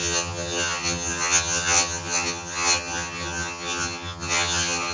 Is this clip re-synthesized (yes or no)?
yes